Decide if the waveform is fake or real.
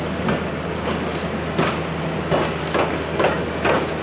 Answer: real